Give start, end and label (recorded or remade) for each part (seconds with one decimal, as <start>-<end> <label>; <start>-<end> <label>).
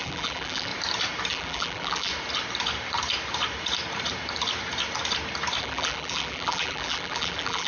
0.0-0.7 remade; 0.7-1.3 recorded; 1.3-2.1 remade; 2.1-5.6 recorded; 5.6-7.7 remade